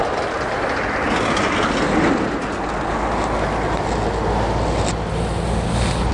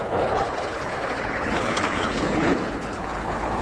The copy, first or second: second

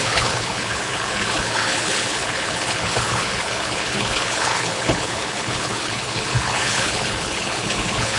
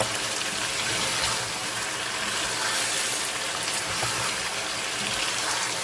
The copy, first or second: first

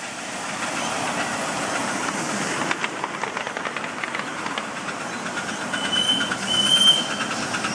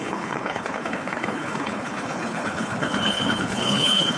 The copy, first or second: second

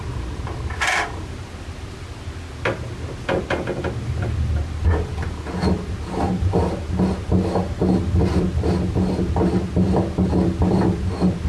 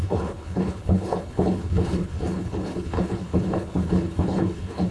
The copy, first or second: second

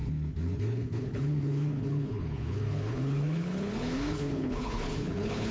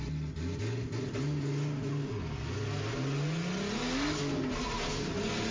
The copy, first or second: first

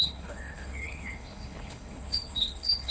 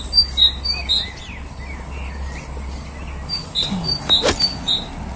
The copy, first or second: first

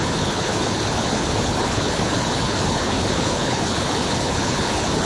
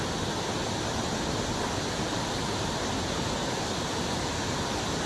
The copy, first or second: first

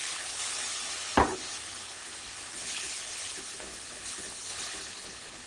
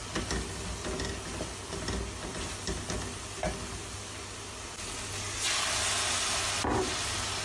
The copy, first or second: first